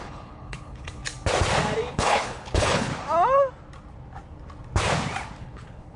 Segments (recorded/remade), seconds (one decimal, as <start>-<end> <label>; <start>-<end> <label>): 0.0-1.0 remade; 1.0-1.9 recorded; 1.9-2.9 remade; 2.9-5.4 recorded; 5.4-6.0 remade